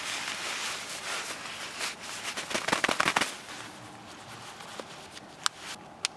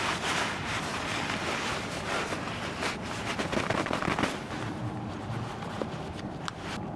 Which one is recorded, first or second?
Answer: first